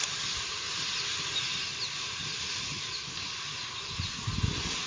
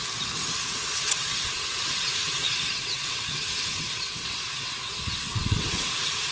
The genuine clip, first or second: first